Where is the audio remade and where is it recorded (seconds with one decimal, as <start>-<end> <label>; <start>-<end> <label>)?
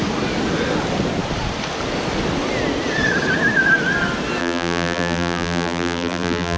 0.0-4.4 recorded; 4.4-6.6 remade